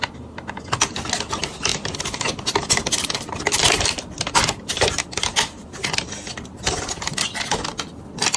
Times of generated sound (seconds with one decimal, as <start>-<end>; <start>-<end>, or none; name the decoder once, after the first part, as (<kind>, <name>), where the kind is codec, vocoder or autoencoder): 1.7-5.9 (vocoder, BigVGAN v2)